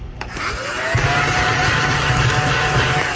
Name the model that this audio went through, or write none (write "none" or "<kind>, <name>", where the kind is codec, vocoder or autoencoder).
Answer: vocoder, BigVGAN v2